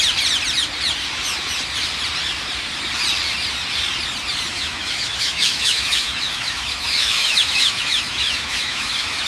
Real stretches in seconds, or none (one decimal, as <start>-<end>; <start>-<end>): 0.0-4.5